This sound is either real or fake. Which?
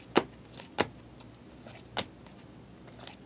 real